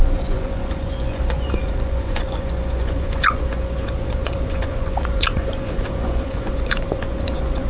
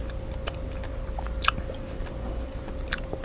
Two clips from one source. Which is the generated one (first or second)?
first